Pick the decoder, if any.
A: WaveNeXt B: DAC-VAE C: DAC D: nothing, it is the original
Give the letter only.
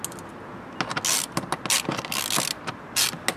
D